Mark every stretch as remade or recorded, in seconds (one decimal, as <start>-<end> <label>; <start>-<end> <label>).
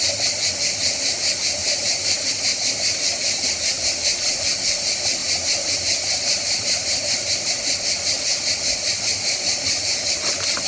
0.0-1.6 recorded; 1.6-2.3 remade; 2.3-5.2 recorded; 5.2-7.5 remade; 7.5-10.7 recorded